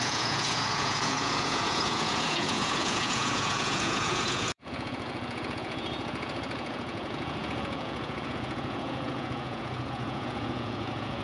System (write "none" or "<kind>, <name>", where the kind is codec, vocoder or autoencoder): vocoder, Vocos